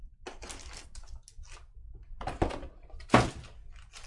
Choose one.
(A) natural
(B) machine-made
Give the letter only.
A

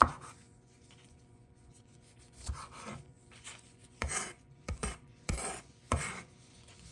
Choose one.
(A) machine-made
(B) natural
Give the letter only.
A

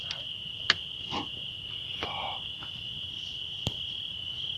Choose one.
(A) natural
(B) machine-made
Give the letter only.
A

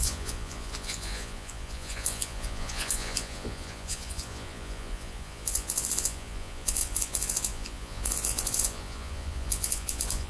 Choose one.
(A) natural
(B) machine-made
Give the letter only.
B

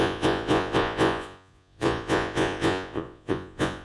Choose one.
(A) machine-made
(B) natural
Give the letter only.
A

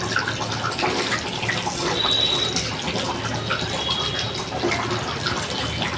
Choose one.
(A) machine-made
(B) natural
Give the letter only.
B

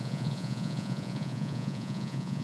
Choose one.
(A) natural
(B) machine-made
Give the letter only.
B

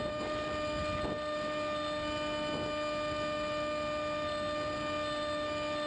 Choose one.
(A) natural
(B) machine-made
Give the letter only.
A